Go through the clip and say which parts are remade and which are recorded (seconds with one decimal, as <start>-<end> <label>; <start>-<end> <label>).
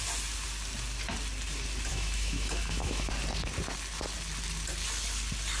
0.0-1.9 recorded; 1.9-3.1 remade; 3.1-5.6 recorded